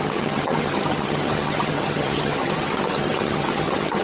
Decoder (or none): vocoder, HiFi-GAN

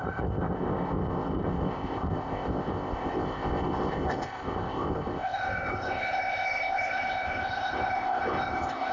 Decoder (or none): codec, ZipCodec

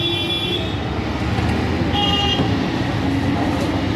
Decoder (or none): none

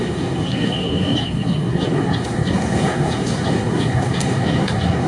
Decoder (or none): codec, SNAC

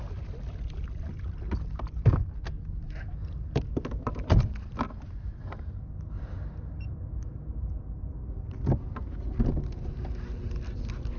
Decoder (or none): none